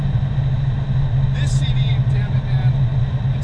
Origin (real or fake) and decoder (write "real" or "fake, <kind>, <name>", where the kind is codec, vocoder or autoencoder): real